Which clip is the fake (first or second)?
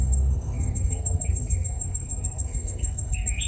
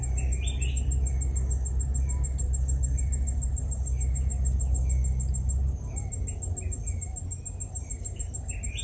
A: first